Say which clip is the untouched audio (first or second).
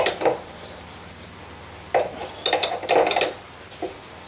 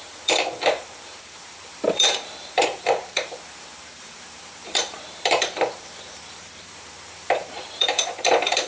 first